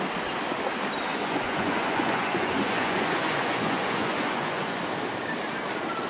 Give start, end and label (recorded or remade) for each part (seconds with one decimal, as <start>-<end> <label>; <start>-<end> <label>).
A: 0.0-1.1 recorded; 1.1-4.8 remade; 4.8-6.1 recorded

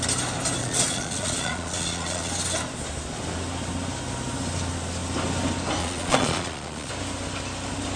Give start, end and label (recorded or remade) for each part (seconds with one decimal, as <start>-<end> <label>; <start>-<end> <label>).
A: 0.0-0.6 recorded; 0.6-2.3 remade; 2.3-5.8 recorded; 5.8-6.9 remade; 6.9-8.0 recorded

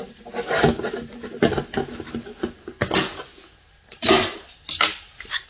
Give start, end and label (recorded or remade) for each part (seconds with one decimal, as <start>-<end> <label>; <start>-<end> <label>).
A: 0.0-5.5 recorded

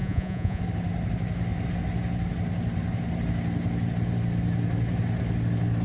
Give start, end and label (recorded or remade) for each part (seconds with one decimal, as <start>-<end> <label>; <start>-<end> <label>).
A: 0.0-0.6 remade; 0.6-5.8 recorded

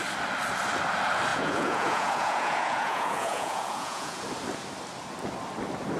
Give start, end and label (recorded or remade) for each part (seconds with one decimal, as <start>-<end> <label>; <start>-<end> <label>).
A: 0.0-1.3 recorded; 1.3-4.2 remade; 4.2-6.0 recorded

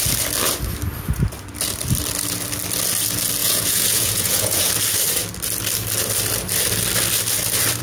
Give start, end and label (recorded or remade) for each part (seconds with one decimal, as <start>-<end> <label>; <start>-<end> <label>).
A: 0.0-3.4 recorded; 3.4-4.7 remade; 4.7-7.8 recorded